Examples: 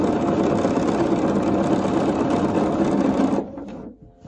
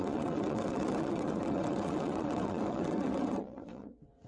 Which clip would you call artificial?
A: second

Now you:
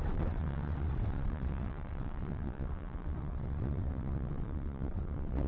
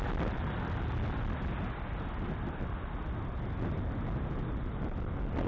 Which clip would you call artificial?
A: first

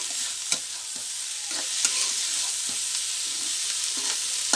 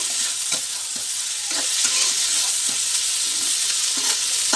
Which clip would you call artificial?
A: second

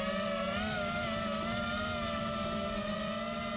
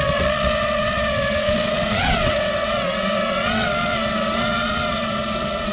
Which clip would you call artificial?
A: second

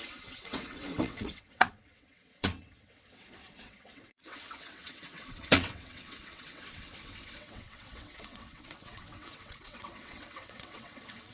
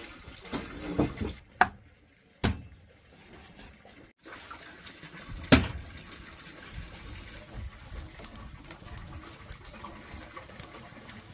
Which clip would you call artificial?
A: first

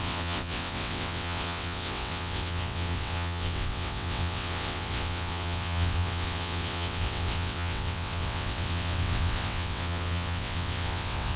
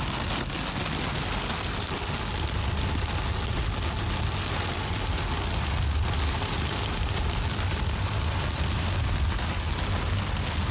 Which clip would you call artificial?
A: first